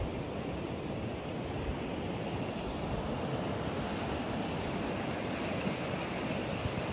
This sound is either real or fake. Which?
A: real